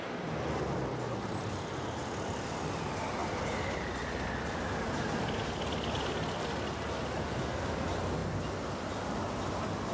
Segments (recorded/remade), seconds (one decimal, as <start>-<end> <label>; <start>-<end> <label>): 0.0-9.9 recorded